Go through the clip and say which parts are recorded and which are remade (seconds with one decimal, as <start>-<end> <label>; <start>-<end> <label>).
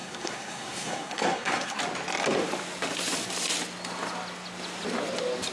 0.0-1.8 remade; 1.8-5.5 recorded